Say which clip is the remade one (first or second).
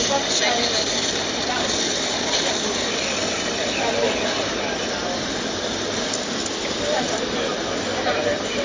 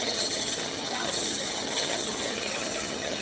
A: second